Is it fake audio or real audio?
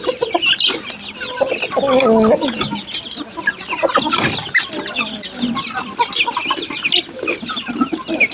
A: real